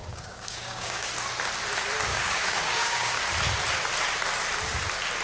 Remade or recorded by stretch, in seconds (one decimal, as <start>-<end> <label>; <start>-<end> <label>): 0.0-1.1 remade; 1.1-2.1 recorded; 2.1-3.2 remade; 3.2-5.2 recorded